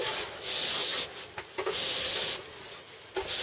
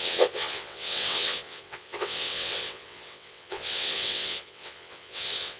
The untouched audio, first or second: first